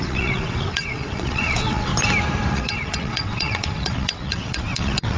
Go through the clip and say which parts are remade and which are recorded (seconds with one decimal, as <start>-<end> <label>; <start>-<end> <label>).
0.0-1.9 remade; 1.9-2.5 recorded; 2.5-5.2 remade